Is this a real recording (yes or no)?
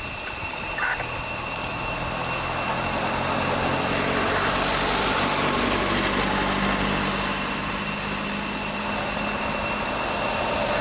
yes